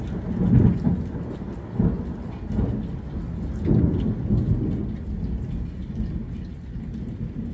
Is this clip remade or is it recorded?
recorded